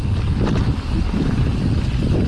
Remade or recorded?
remade